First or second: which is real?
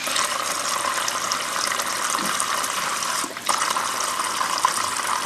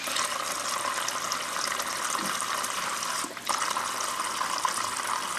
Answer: second